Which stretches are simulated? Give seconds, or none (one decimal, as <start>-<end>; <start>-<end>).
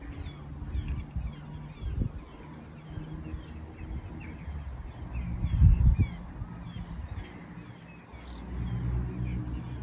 none